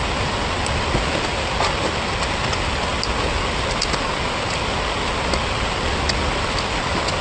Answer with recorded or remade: recorded